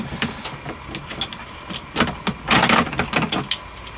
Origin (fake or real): real